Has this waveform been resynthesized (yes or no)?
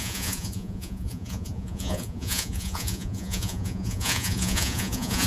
yes